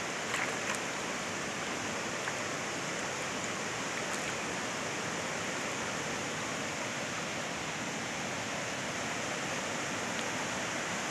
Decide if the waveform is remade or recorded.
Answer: recorded